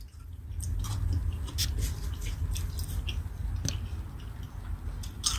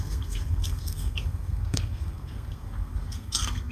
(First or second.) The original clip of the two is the first